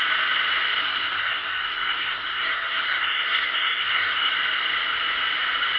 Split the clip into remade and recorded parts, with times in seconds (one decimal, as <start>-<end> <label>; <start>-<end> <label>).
0.0-0.8 recorded; 0.8-4.3 remade; 4.3-5.8 recorded